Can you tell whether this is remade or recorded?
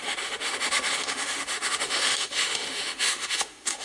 remade